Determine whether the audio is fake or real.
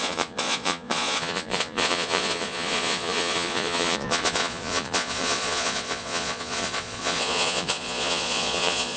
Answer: fake